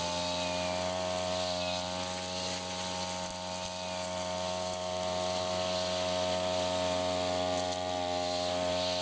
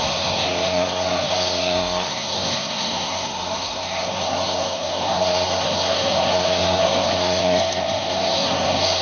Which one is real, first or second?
first